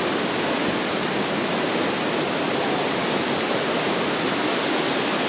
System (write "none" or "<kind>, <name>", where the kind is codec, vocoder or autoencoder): none